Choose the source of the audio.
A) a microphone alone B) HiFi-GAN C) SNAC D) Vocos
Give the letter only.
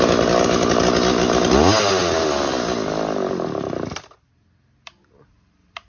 A